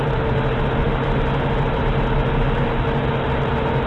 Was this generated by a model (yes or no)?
no